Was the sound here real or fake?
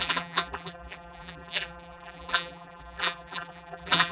fake